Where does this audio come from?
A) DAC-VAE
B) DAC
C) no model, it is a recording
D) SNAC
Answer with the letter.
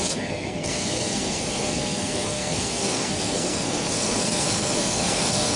D